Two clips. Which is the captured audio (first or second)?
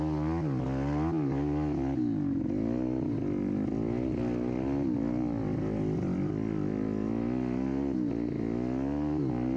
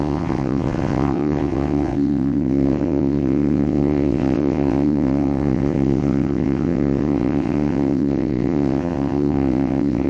first